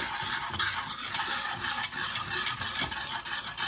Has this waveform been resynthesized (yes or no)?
no